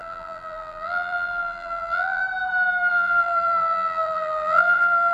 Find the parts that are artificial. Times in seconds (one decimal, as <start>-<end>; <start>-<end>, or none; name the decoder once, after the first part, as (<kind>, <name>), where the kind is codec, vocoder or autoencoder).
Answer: 0.0-2.2 (vocoder, BigVGAN v2); 2.9-5.1